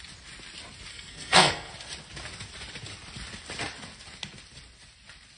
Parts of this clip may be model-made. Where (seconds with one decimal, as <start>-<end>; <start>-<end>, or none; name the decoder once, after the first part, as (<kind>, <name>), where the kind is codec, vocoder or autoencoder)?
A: 0.9-1.7 (codec, SNAC)

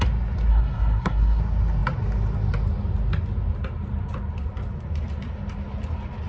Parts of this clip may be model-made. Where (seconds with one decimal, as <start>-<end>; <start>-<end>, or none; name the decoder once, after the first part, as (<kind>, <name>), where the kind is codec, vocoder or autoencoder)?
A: 0.5-1.4 (codec, SNAC)